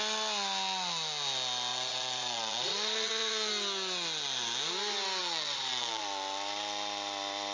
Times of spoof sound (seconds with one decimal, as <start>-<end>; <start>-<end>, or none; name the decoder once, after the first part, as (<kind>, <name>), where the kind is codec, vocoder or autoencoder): 1.7-3.5 (vocoder, Vocos); 5.2-6.0